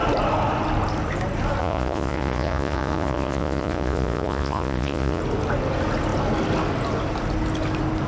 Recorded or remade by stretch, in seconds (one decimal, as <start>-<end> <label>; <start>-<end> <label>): 0.0-1.6 recorded; 1.6-5.2 remade; 5.2-8.1 recorded